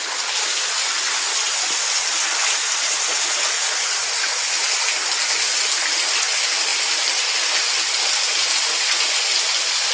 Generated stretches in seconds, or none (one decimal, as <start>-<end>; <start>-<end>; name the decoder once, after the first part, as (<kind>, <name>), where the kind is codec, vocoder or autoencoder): none